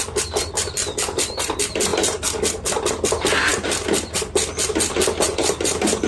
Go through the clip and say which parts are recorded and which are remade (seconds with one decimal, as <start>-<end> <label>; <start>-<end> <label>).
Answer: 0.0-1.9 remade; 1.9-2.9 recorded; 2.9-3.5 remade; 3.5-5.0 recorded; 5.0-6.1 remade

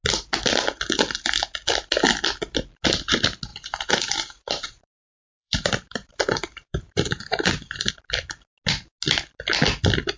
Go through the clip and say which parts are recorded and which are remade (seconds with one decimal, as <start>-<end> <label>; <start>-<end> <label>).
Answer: 0.0-3.5 recorded; 3.5-7.9 remade; 7.9-10.2 recorded

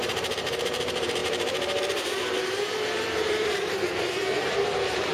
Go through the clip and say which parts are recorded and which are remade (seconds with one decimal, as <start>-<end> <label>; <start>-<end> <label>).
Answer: 0.0-5.1 remade

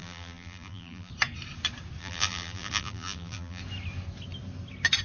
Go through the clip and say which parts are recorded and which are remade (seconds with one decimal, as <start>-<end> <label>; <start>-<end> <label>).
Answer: 0.0-1.1 remade; 1.1-2.0 recorded; 2.0-3.6 remade; 3.6-5.0 recorded

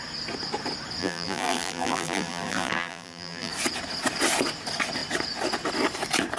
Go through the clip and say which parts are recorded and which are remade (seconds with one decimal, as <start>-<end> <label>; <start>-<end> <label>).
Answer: 0.0-1.0 recorded; 1.0-3.5 remade; 3.5-6.4 recorded

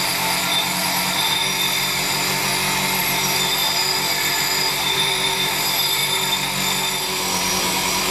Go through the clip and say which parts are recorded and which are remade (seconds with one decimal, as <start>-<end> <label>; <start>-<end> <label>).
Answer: 0.0-2.5 remade; 2.5-3.0 recorded; 3.0-3.6 remade; 3.6-4.7 recorded; 4.7-6.0 remade; 6.0-7.5 recorded; 7.5-8.1 remade

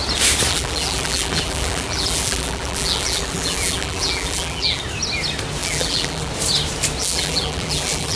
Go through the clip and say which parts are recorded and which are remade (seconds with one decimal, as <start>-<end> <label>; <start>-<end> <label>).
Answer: 0.0-0.5 recorded; 0.5-4.8 remade; 4.8-5.6 recorded; 5.6-6.3 remade; 6.3-7.0 recorded; 7.0-8.2 remade

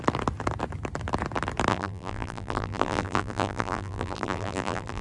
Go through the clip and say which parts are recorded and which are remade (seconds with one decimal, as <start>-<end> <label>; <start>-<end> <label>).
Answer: 0.0-1.7 recorded; 1.7-5.0 remade